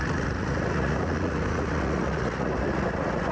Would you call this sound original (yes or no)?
no